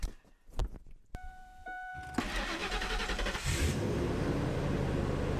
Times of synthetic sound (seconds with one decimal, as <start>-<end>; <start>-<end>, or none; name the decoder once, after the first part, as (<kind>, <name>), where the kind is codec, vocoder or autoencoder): 0.6-1.9 (vocoder, BigVGAN v2); 2.6-4.1